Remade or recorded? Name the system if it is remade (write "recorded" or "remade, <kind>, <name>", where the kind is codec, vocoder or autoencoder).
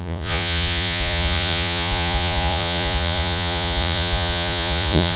remade, vocoder, Vocos